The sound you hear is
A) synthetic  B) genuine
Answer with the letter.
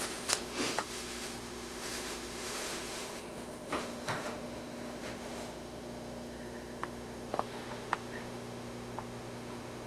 A